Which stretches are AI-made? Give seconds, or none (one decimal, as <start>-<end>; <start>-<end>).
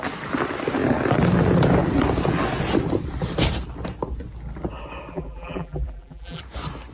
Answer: 5.1-6.4